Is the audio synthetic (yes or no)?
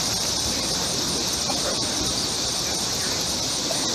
no